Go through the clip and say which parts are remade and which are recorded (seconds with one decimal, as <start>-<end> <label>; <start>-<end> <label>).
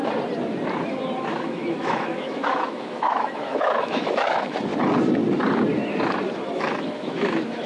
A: 0.0-1.3 recorded; 1.3-4.7 remade; 4.7-6.5 recorded; 6.5-7.7 remade